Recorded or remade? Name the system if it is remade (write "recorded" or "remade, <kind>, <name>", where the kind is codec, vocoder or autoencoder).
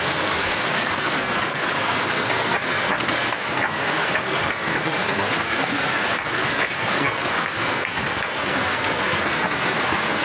remade, codec, SNAC